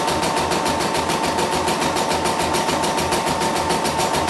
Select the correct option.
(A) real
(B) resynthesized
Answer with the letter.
A